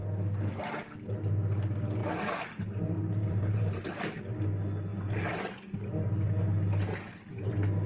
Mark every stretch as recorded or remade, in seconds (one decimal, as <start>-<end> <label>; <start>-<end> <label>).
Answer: 0.0-2.0 recorded; 2.0-4.2 remade; 4.2-4.9 recorded; 4.9-5.5 remade; 5.5-7.9 recorded